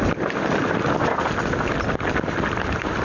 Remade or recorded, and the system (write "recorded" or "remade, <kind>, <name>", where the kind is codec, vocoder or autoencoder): recorded